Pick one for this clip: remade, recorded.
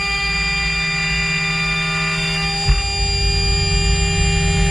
recorded